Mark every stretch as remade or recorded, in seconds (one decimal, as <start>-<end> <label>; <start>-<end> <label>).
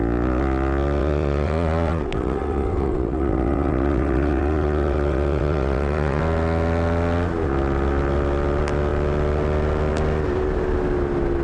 0.0-1.0 recorded; 1.0-6.2 remade; 6.2-11.4 recorded